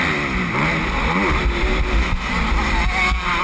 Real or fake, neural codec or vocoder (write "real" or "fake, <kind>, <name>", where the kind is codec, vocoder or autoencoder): real